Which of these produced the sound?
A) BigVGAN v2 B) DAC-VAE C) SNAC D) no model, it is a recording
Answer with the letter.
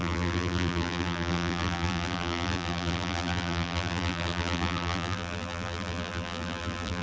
A